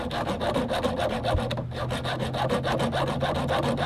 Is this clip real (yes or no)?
yes